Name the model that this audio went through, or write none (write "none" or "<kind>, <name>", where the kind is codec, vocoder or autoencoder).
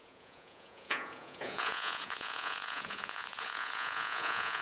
vocoder, Vocos